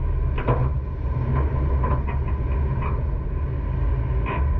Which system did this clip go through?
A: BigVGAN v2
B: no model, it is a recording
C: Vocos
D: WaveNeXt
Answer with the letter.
B